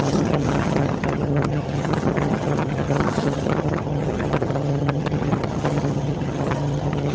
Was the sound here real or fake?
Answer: fake